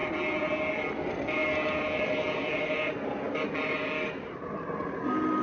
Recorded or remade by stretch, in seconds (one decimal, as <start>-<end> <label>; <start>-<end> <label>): 0.0-5.4 recorded